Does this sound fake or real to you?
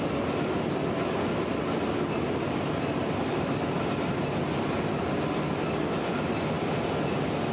real